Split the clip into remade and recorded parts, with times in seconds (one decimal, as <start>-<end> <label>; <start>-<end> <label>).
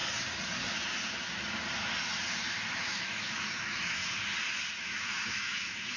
0.0-2.7 recorded; 2.7-4.0 remade; 4.0-4.7 recorded; 4.7-6.0 remade